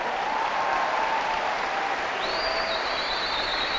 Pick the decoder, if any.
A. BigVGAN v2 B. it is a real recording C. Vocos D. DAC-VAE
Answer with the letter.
B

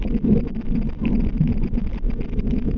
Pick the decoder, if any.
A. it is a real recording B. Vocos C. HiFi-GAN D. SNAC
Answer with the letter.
A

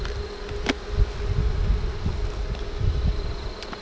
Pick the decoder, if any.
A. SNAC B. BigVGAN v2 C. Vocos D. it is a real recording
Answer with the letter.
D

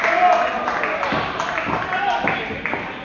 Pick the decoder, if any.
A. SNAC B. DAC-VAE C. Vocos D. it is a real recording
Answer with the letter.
D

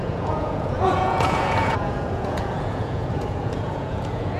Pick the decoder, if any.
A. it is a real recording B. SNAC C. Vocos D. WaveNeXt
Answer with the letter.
C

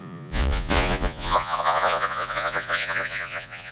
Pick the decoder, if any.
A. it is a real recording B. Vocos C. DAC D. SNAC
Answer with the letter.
B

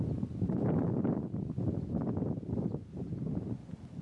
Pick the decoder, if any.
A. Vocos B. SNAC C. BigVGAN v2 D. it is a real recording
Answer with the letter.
D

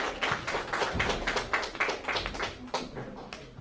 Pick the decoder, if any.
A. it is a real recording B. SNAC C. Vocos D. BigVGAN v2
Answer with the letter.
A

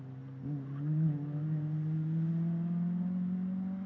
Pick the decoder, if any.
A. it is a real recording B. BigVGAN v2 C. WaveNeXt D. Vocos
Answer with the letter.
A